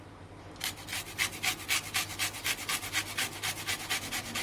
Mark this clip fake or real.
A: real